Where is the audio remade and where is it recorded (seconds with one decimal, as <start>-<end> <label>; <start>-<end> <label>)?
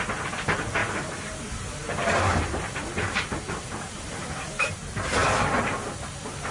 0.0-0.8 recorded; 0.8-4.7 remade; 4.7-6.5 recorded